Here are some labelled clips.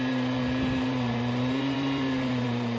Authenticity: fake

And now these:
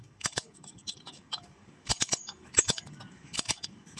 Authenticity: fake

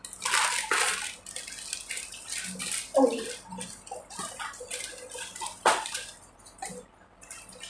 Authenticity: real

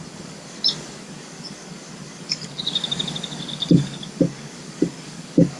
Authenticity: fake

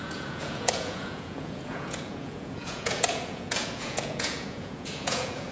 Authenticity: fake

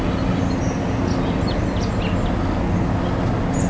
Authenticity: real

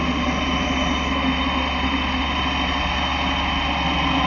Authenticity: real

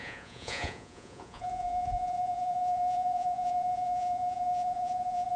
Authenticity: fake